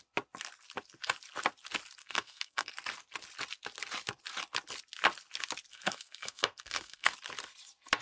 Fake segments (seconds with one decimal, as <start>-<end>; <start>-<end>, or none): 2.0-2.7; 5.7-7.1